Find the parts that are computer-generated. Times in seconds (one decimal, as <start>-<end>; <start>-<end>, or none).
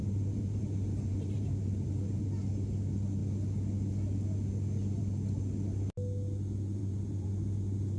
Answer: 0.0-2.2; 6.8-8.0